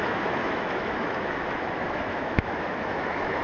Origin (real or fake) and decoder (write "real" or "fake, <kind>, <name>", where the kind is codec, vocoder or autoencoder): fake, autoencoder, DAC-VAE